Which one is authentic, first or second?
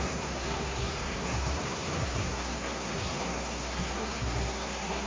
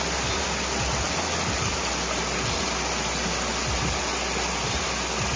second